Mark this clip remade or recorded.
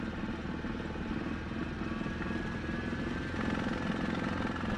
recorded